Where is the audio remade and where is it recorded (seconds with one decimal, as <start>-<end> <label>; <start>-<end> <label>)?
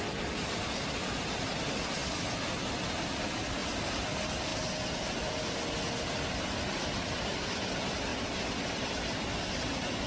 0.0-10.1 recorded